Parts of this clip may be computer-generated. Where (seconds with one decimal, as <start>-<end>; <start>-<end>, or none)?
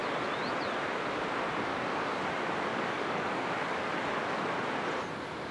1.7-2.3; 2.7-4.4